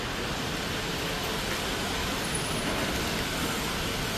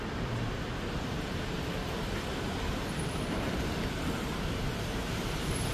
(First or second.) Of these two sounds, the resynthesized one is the second